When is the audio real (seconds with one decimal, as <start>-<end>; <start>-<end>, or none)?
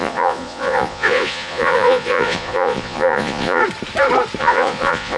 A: 3.6-4.4